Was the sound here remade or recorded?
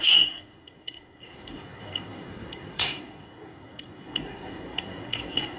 remade